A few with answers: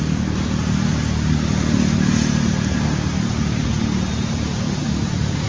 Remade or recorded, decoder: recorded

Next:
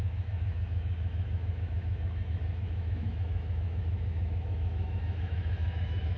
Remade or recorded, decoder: remade, autoencoder, DAC-VAE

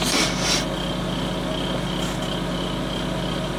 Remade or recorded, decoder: recorded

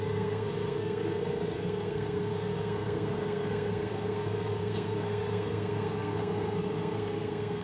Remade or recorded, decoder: remade, codec, SNAC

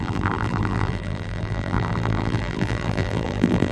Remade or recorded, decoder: remade, vocoder, BigVGAN v2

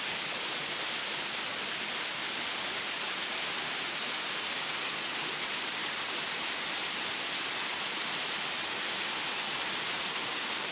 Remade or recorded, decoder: recorded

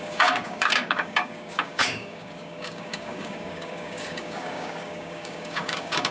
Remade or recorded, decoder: remade, codec, DAC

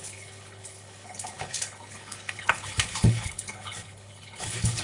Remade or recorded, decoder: remade, codec, HILCodec